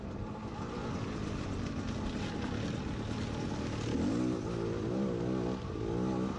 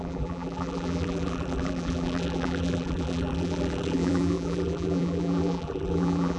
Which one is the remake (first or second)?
second